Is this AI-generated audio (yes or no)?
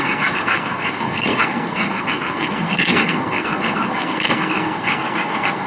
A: yes